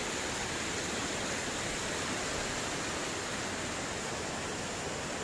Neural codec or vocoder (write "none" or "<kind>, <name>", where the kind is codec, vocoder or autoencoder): none